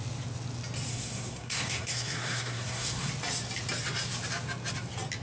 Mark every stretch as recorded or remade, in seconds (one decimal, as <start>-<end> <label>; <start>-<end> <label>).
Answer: 0.0-0.9 recorded; 0.9-3.1 remade; 3.1-5.2 recorded